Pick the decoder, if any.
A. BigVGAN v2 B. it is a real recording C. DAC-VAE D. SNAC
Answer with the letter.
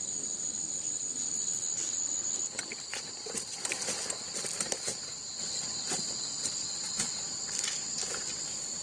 A